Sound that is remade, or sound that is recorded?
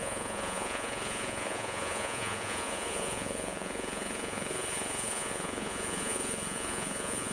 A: remade